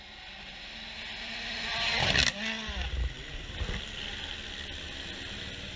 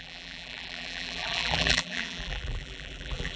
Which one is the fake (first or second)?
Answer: second